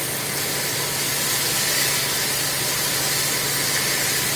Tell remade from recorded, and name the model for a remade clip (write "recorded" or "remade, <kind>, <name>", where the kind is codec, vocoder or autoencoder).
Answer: recorded